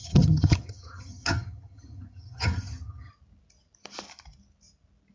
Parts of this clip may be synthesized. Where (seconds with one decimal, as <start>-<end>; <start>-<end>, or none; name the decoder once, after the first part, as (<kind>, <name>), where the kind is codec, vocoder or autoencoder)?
0.0-3.1 (vocoder, HiFi-GAN)